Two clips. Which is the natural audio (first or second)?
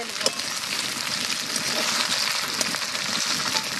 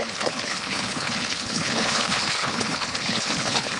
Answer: first